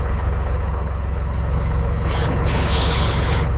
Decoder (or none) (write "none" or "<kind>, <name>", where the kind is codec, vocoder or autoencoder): codec, HILCodec